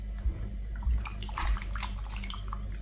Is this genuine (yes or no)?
no